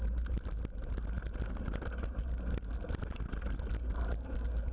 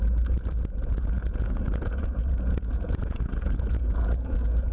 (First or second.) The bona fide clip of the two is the first